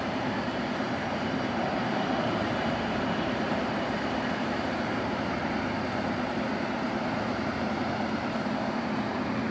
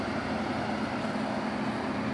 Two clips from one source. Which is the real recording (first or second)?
second